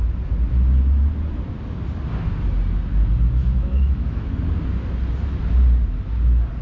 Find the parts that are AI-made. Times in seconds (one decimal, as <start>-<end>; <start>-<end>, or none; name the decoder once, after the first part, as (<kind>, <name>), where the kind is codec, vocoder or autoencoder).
3.4-4.3 (autoencoder, DAC-VAE)